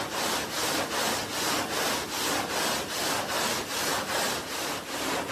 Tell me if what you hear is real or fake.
real